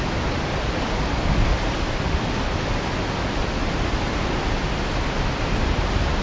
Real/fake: real